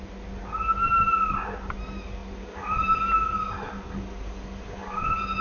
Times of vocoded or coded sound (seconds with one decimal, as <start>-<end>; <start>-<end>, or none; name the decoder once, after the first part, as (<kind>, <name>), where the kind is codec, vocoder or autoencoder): none